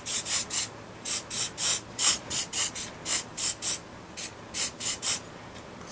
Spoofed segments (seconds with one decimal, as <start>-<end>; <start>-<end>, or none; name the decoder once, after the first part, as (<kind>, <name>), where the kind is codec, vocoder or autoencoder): 1.9-2.4 (vocoder, Vocos)